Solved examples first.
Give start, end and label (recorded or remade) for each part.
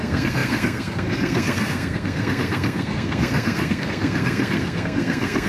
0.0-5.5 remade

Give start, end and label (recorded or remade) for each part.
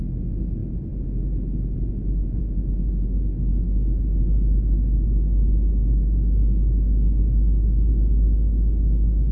0.0-9.3 recorded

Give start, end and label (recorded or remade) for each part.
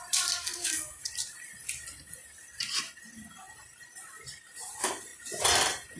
0.0-0.4 recorded; 0.4-1.0 remade; 1.0-6.0 recorded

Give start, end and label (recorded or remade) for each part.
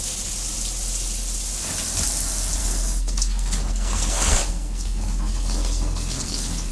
0.0-2.6 recorded; 2.6-6.7 remade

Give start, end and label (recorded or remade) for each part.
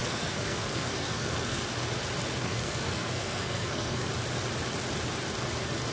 0.0-1.6 remade; 1.6-2.4 recorded; 2.4-4.1 remade; 4.1-5.9 recorded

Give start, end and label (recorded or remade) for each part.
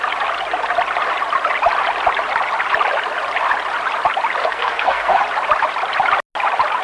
0.0-4.4 recorded; 4.4-5.2 remade; 5.2-6.8 recorded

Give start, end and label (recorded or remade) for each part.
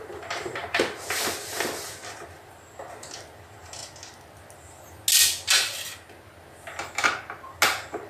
0.0-8.1 recorded